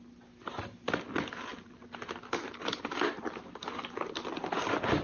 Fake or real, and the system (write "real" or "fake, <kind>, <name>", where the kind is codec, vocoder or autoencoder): real